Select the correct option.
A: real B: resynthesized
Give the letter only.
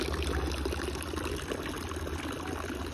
A